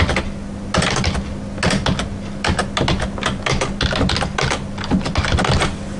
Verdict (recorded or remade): recorded